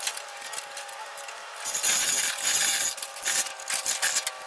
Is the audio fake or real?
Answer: real